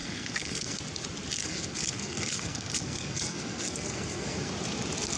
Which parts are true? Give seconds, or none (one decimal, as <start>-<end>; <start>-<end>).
0.8-1.4; 4.5-5.2